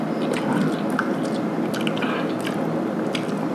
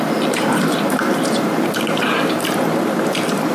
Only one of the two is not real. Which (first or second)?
second